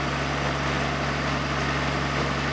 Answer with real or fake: real